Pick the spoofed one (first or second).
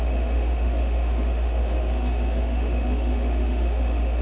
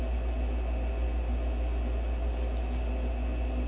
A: first